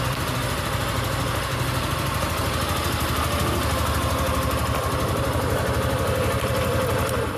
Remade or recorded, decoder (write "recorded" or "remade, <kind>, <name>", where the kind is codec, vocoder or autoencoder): recorded